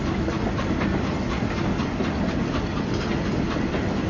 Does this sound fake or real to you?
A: real